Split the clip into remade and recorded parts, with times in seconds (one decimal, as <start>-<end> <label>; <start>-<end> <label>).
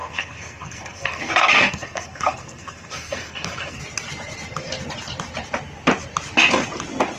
0.0-3.8 remade; 3.8-7.2 recorded